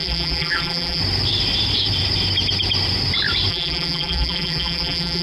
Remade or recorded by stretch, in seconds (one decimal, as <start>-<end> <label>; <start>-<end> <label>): 0.0-1.0 remade; 1.0-3.5 recorded; 3.5-5.2 remade